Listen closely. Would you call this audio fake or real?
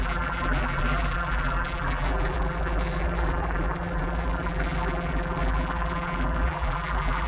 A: fake